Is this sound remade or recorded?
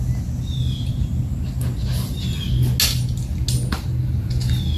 recorded